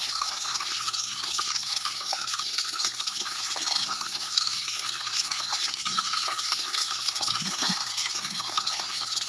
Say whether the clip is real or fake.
fake